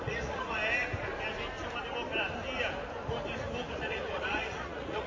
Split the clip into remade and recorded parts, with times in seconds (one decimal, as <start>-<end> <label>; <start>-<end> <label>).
0.0-0.6 remade; 0.6-3.7 recorded; 3.7-5.1 remade